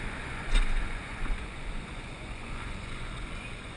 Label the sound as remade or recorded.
remade